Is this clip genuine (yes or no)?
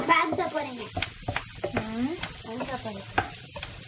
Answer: yes